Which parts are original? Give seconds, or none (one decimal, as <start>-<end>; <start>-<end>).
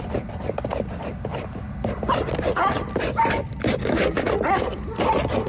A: 0.0-3.8; 4.3-5.5